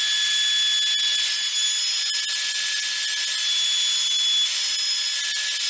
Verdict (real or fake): real